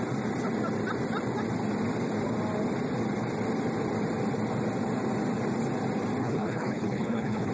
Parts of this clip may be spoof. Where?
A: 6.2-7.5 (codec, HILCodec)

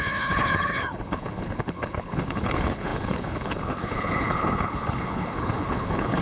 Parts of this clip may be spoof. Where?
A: 0.0-6.2 (codec, HILCodec)

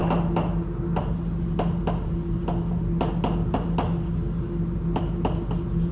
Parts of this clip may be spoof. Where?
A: none

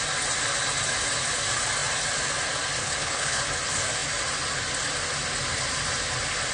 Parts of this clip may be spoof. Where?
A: 2.8-3.4 (codec, HILCodec)

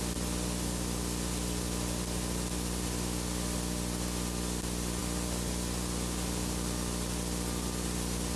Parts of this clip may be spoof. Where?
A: none

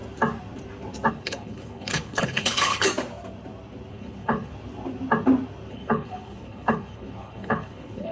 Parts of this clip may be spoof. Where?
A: 1.1-2.9 (codec, HILCodec); 3.9-4.5; 5.7-8.1

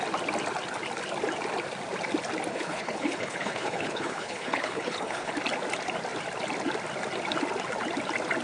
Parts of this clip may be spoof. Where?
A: 2.5-5.3 (codec, HILCodec)